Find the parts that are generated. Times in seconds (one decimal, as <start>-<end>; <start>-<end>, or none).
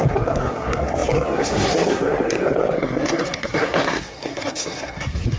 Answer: 0.0-5.4